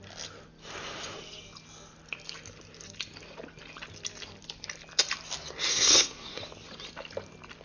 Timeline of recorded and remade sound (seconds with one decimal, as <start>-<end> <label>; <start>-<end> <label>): 0.0-5.7 recorded; 5.7-6.4 remade; 6.4-7.6 recorded